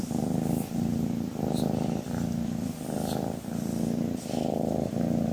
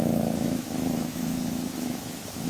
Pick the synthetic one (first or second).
second